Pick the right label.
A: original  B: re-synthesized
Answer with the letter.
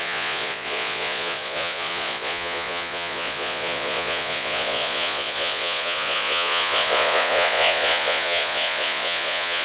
B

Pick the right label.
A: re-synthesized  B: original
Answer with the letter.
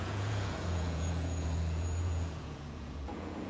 A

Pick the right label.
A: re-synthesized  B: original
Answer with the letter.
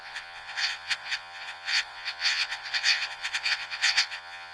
A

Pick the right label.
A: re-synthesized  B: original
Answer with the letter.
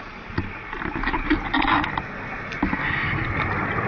B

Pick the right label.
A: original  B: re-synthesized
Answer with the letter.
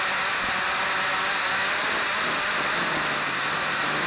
A